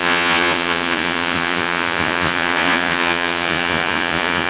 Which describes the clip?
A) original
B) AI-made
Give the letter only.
B